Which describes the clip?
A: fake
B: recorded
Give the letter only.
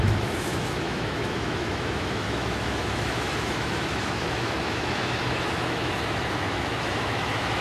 A